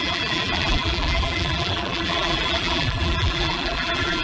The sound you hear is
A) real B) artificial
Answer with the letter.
B